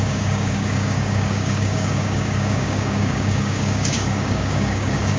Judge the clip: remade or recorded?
remade